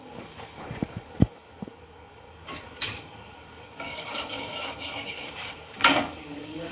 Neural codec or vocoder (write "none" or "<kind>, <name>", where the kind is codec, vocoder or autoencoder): codec, DAC